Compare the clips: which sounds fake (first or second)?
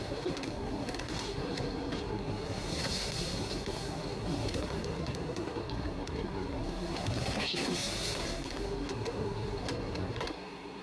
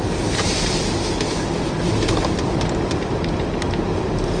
first